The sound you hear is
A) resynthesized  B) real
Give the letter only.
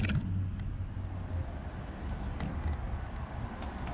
B